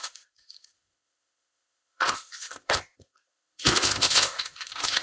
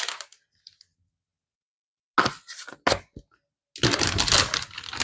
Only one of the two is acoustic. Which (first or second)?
second